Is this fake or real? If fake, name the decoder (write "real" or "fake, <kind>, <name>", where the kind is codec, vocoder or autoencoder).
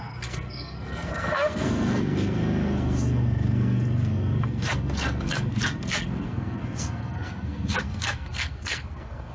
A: fake, codec, SNAC